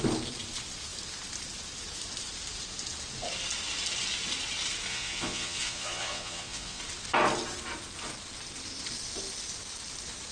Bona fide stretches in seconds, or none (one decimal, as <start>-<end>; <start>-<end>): 0.0-4.9; 6.8-10.3